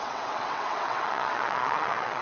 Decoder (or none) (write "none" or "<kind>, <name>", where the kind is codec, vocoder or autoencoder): vocoder, WaveNeXt